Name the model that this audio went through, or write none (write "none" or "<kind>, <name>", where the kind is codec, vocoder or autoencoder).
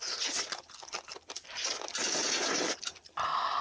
none